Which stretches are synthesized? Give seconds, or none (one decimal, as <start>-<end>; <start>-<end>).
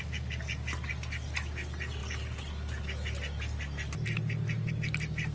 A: none